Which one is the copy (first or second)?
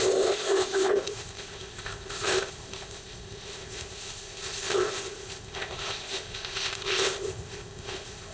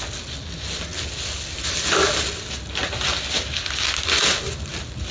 first